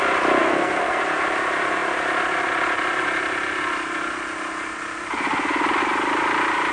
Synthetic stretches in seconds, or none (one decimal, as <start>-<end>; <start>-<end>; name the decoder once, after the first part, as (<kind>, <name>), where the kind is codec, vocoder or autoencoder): 0.4-1.0 (codec, SNAC)